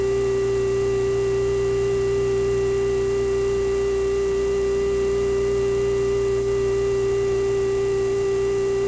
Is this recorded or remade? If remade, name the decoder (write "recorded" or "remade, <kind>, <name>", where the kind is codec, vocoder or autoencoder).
recorded